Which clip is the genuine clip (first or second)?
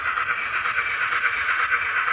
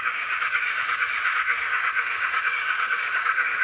first